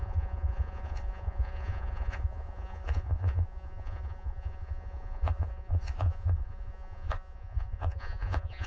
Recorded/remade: remade